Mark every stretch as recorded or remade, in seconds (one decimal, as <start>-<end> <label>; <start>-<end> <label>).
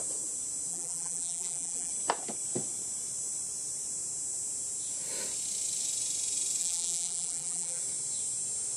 0.0-0.7 recorded; 0.7-1.9 remade; 1.9-6.6 recorded; 6.6-7.8 remade; 7.8-8.8 recorded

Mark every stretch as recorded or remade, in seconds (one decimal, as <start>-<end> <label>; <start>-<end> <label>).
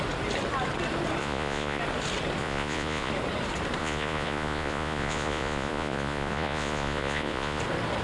0.0-1.2 recorded; 1.2-1.8 remade; 1.8-2.4 recorded; 2.4-3.1 remade; 3.1-3.8 recorded; 3.8-7.6 remade; 7.6-8.0 recorded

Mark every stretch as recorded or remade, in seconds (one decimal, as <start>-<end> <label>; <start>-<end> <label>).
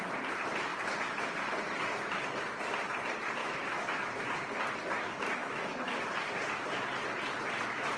0.0-3.4 recorded; 3.4-4.2 remade; 4.2-5.4 recorded; 5.4-6.0 remade; 6.0-8.0 recorded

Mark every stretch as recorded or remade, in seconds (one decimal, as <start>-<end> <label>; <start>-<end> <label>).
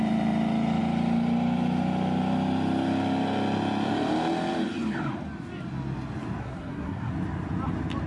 0.0-6.4 recorded; 6.4-7.1 remade; 7.1-8.1 recorded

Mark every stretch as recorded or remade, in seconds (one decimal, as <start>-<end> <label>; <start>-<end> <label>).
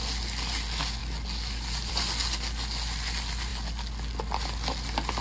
0.0-5.2 recorded